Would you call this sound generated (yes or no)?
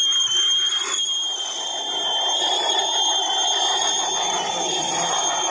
no